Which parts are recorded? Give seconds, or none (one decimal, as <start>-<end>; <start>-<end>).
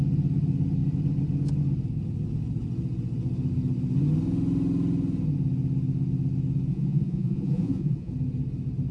0.0-6.7; 8.1-8.9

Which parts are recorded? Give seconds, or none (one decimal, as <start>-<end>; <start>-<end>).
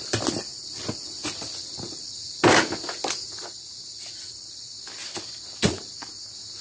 0.0-0.5; 2.4-3.7; 4.7-6.6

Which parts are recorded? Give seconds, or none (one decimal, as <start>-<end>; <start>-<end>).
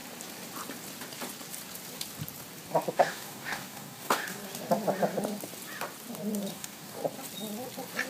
0.0-2.9; 4.4-6.5; 7.0-8.1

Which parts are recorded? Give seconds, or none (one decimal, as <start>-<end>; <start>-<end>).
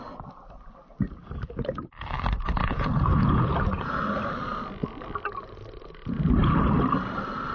0.0-2.6; 3.9-7.5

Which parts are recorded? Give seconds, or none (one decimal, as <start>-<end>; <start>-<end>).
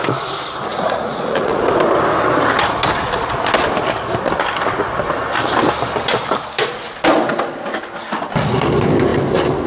0.0-0.7; 1.6-9.7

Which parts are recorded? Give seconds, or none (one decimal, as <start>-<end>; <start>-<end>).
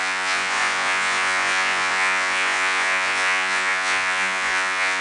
none